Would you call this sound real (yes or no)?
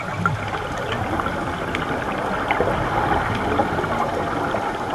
yes